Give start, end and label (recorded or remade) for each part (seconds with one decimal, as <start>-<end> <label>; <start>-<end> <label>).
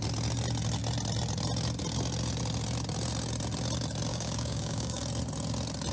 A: 0.0-4.1 recorded; 4.1-5.0 remade; 5.0-5.9 recorded